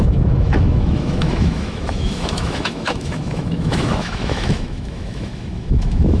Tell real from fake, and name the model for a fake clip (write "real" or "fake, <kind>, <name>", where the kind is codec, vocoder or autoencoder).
fake, autoencoder, DAC-VAE